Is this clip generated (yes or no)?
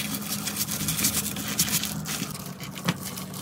no